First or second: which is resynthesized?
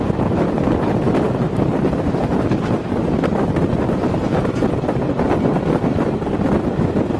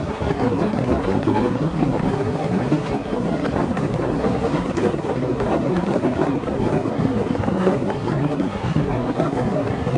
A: second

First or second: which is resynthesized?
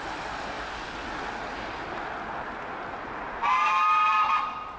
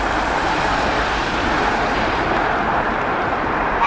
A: second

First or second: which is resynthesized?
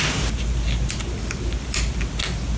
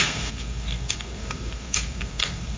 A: second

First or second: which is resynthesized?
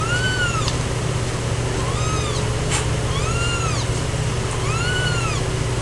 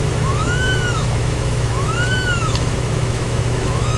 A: second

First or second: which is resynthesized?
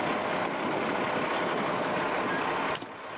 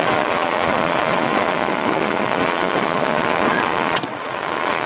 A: second